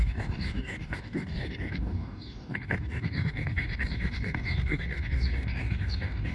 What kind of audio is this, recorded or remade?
remade